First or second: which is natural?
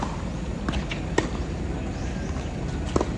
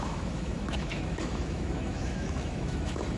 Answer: first